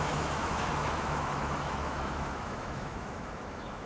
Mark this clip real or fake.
fake